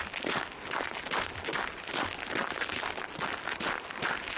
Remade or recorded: recorded